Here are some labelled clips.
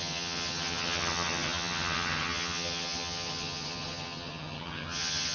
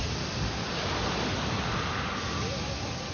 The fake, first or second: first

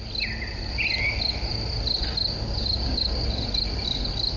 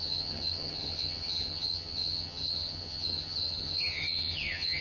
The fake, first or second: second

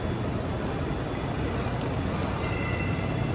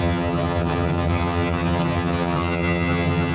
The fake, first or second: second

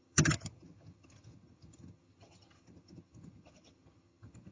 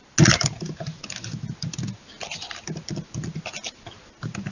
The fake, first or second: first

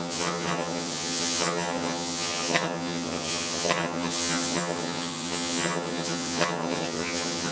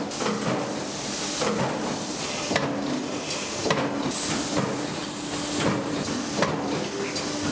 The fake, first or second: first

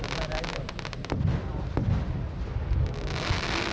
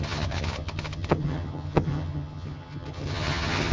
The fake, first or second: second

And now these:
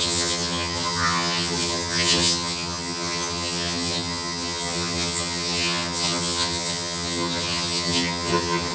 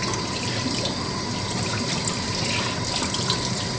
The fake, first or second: first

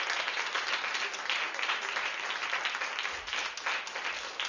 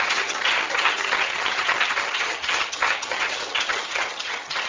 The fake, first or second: second